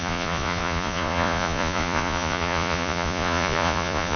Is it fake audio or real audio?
fake